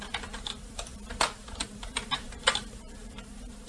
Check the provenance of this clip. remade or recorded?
remade